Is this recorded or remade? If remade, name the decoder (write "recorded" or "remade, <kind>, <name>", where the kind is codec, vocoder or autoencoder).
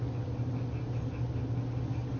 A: recorded